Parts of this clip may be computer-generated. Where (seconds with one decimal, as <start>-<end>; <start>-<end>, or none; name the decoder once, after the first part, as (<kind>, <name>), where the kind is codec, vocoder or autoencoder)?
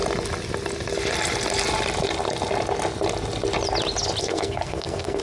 4.2-5.2 (codec, SNAC)